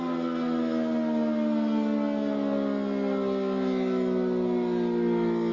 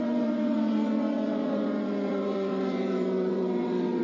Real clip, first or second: first